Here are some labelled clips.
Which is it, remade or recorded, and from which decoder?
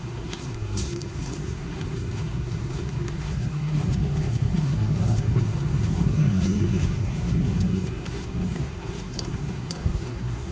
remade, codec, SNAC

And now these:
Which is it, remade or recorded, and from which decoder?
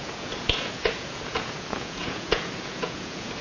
remade, vocoder, Vocos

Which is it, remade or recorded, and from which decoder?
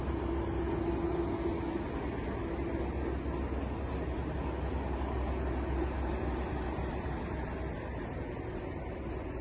recorded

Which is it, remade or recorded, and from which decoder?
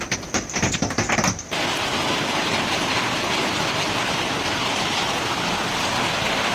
recorded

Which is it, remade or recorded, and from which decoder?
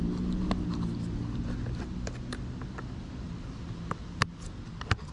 recorded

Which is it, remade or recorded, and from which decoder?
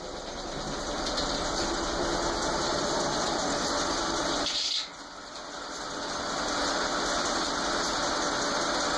recorded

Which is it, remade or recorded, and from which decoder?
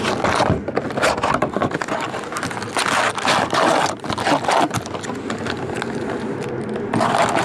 recorded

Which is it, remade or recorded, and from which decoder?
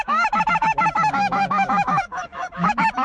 remade, autoencoder, DAC-VAE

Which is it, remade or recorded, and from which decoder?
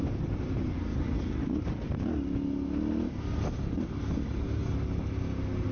recorded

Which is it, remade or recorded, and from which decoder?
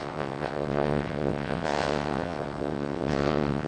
remade, vocoder, WaveNeXt